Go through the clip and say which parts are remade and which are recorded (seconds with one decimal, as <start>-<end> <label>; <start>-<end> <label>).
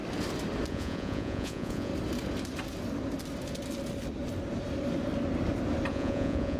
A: 0.0-0.7 recorded; 0.7-1.9 remade; 1.9-5.9 recorded; 5.9-6.6 remade